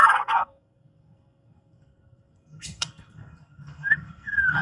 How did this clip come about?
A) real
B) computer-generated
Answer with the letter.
B